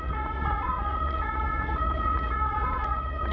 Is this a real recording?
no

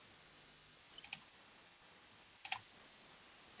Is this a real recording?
yes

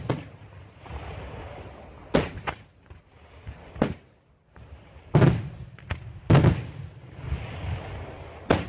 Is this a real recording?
yes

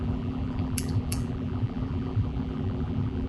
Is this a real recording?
no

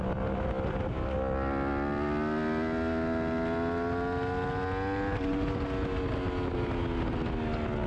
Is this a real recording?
yes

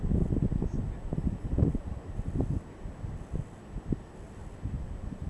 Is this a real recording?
yes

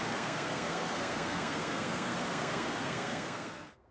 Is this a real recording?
no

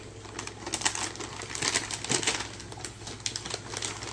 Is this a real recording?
yes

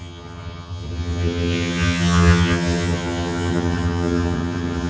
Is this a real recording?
no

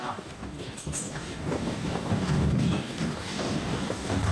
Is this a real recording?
no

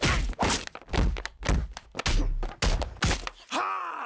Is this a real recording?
yes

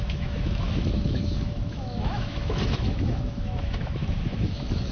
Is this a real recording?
no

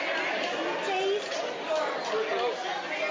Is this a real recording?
yes